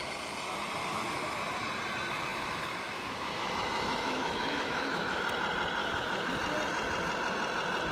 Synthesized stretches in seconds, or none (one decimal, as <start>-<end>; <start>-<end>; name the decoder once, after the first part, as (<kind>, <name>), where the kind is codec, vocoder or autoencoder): 0.8-1.4 (autoencoder, DAC-VAE); 2.3-5.2; 5.8-6.3